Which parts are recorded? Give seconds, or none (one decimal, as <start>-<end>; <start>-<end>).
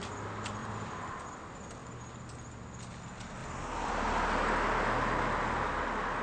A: 0.0-0.6; 1.2-3.4; 3.9-6.2